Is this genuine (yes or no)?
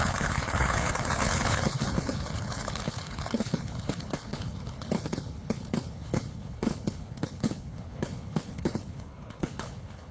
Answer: no